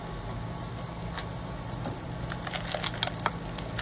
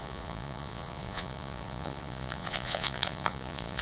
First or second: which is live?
first